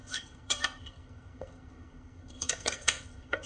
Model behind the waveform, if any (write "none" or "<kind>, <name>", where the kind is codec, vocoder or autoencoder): codec, SNAC